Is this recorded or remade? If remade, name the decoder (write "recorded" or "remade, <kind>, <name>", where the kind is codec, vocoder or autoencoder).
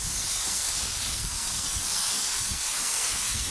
remade, codec, SNAC